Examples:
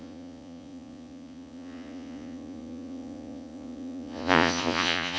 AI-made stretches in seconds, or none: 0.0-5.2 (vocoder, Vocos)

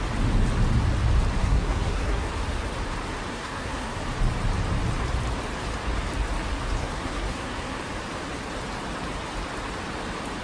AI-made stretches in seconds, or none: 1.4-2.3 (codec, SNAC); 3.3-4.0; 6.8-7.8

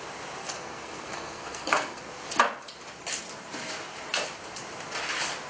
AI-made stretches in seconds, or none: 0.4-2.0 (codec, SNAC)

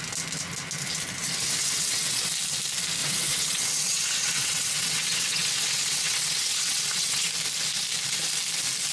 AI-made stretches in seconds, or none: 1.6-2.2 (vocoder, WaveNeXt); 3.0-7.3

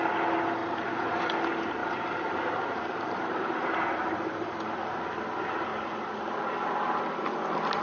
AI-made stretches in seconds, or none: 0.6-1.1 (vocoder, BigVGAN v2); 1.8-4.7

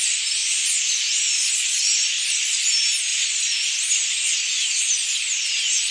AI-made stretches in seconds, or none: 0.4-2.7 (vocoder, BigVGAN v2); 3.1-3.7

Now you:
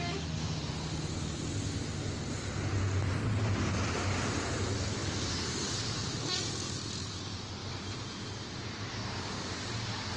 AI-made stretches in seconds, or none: none

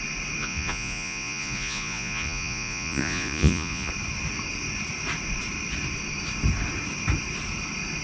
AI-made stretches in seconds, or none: 0.4-3.9 (vocoder, Vocos)